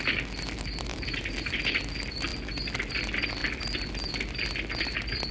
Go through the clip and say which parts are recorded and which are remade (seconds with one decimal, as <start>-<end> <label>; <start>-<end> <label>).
0.0-0.9 recorded; 0.9-1.6 remade; 1.6-5.3 recorded

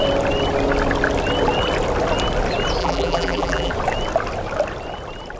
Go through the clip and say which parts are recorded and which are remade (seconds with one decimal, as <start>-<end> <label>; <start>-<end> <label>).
0.0-2.8 recorded; 2.8-3.7 remade; 3.7-5.4 recorded